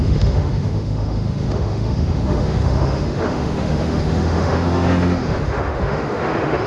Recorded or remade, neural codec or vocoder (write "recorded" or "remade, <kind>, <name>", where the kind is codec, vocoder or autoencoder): remade, autoencoder, DAC-VAE